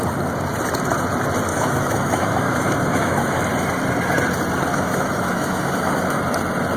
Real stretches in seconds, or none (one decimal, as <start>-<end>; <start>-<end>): 0.0-1.5; 3.4-4.7; 6.2-6.8